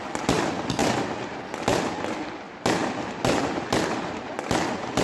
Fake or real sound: real